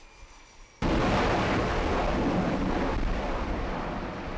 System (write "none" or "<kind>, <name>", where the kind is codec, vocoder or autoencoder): none